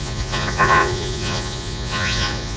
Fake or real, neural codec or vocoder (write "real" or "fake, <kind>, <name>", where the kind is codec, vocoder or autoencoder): fake, vocoder, Vocos